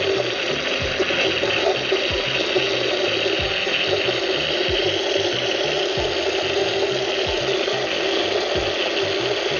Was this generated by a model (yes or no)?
no